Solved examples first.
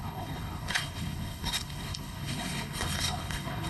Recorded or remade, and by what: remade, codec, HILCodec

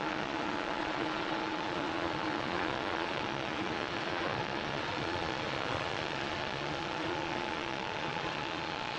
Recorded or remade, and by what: remade, vocoder, Vocos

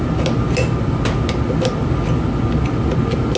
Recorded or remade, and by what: recorded